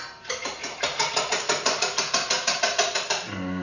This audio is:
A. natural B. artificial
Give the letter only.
A